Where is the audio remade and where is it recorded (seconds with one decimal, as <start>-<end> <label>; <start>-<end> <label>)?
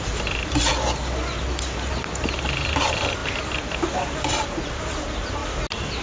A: 0.0-0.7 remade; 0.7-1.9 recorded; 1.9-3.2 remade; 3.2-3.9 recorded; 3.9-5.4 remade; 5.4-6.0 recorded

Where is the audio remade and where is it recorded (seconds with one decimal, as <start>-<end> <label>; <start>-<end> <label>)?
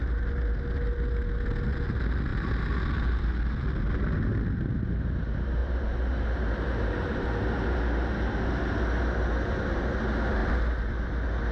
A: 0.0-5.6 recorded; 5.6-7.1 remade; 7.1-11.5 recorded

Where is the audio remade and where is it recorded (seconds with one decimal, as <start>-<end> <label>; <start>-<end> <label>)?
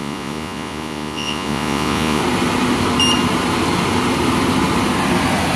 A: 0.0-2.2 remade; 2.2-5.6 recorded